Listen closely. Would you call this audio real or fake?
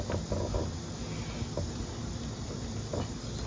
real